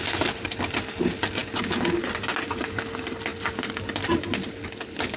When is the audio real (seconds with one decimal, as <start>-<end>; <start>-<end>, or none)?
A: 0.0-5.2